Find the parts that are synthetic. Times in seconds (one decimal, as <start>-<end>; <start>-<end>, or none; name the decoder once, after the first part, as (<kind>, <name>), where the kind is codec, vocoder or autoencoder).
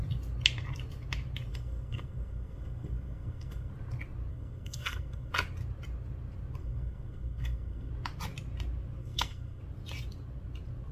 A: 1.5-3.7 (codec, SNAC); 4.3-5.3; 6.6-7.9; 9.0-9.6